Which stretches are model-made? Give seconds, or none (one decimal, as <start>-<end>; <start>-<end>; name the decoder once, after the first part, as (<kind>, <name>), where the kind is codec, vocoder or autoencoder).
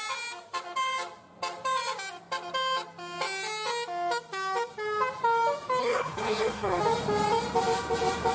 5.8-6.8 (codec, SNAC)